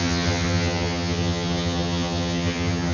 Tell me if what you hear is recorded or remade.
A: remade